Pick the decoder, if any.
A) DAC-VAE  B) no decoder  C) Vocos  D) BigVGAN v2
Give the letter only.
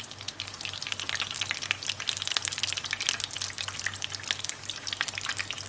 B